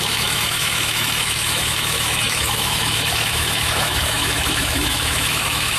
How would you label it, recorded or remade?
remade